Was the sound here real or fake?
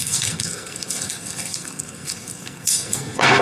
fake